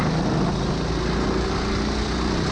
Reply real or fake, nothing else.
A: real